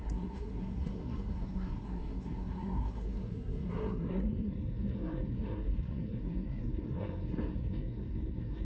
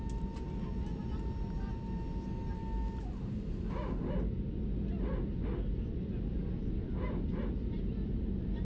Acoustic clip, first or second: second